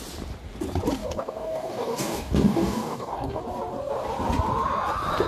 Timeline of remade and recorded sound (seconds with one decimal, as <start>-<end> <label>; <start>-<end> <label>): 0.0-1.0 recorded; 1.0-3.4 remade; 3.4-5.3 recorded

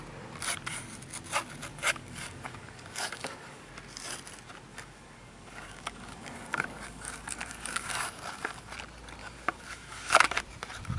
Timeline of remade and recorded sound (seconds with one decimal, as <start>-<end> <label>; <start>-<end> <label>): 0.0-1.7 recorded; 1.7-3.7 remade; 3.7-4.7 recorded; 4.7-8.7 remade; 8.7-9.2 recorded; 9.2-10.4 remade; 10.4-11.0 recorded

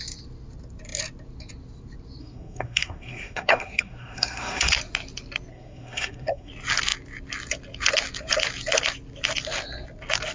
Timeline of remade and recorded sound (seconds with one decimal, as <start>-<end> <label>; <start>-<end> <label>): 0.0-2.2 recorded; 2.2-4.7 remade; 4.7-5.5 recorded; 5.5-6.5 remade; 6.5-10.3 recorded

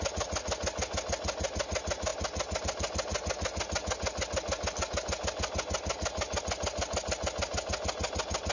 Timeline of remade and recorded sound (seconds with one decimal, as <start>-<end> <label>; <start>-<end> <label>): 0.0-8.5 recorded

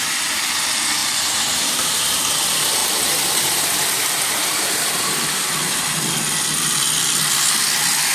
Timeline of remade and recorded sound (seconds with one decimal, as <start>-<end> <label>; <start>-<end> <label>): 0.0-1.0 recorded; 1.0-2.0 remade; 2.0-2.8 recorded; 2.8-4.9 remade; 4.9-8.1 recorded

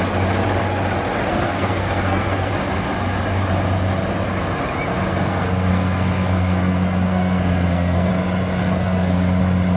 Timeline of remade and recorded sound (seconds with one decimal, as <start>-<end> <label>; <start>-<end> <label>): 0.0-1.3 recorded; 1.3-2.5 remade; 2.5-4.9 recorded; 4.9-8.1 remade; 8.1-8.6 recorded; 8.6-9.4 remade; 9.4-9.8 recorded

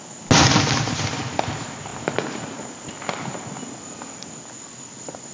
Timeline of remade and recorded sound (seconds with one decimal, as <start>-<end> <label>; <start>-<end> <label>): 0.0-5.3 recorded

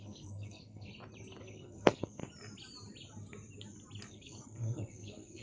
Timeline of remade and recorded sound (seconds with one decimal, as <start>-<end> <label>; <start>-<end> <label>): 0.0-0.9 remade; 0.9-1.4 recorded; 1.4-2.2 remade; 2.2-4.1 recorded; 4.1-5.4 remade